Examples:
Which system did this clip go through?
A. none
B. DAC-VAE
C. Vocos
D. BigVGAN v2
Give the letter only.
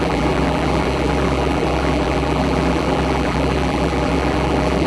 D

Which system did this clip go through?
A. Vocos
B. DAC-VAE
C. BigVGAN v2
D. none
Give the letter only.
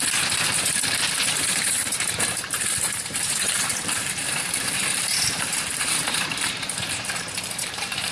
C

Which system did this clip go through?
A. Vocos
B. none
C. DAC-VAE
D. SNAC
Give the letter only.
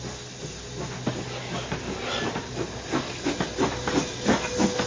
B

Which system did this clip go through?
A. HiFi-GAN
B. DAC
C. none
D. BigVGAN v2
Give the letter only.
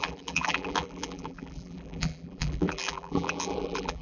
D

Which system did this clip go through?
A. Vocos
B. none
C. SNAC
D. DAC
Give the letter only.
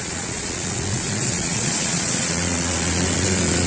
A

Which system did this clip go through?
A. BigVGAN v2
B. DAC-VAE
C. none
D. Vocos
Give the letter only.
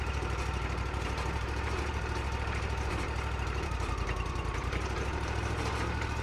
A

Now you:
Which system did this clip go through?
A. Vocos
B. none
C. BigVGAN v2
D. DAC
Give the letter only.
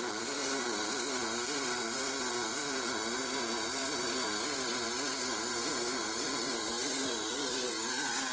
C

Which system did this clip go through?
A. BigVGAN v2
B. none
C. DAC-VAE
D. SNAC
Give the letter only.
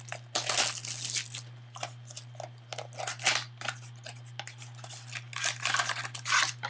B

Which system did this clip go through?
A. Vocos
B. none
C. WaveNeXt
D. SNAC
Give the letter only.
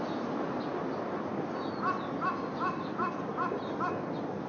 B